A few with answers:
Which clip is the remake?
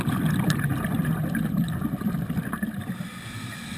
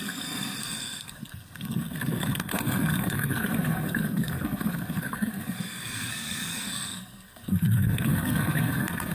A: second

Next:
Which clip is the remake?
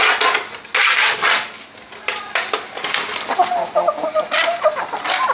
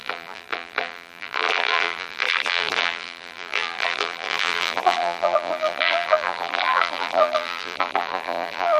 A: second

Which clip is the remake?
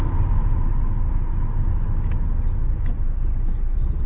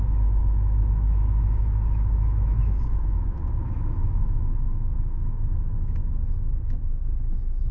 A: second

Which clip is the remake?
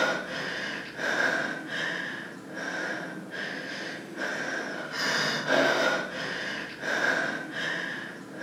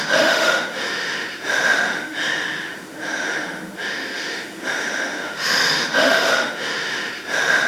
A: second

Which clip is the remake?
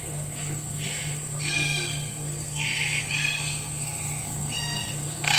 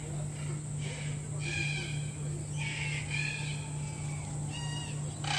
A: first